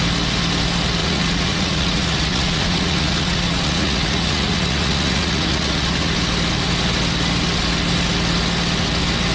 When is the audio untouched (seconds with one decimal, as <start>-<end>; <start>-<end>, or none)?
0.0-1.0; 6.1-9.3